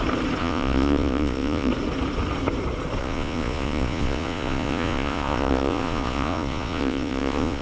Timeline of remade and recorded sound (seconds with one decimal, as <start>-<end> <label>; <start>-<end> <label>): 0.0-0.4 recorded; 0.4-1.7 remade; 1.7-3.0 recorded; 3.0-7.6 remade